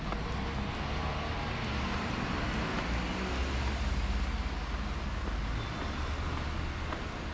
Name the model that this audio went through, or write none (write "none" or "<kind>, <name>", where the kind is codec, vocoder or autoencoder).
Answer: none